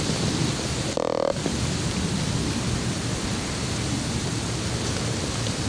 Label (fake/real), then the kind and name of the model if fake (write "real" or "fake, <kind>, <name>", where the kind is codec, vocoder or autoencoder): real